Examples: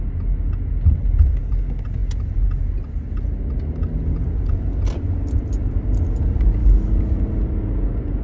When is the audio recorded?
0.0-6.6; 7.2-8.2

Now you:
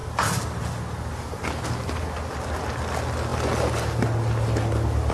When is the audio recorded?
0.0-5.1

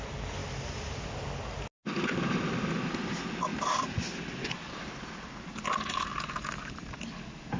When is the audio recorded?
0.0-7.6

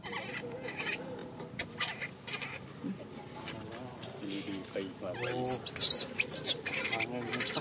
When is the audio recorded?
0.0-7.6

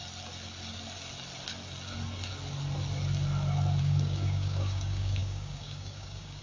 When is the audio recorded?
0.0-3.8

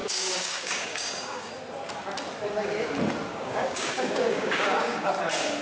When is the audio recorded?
1.5-3.3; 5.1-5.6